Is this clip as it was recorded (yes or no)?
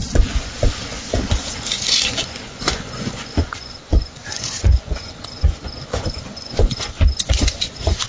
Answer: no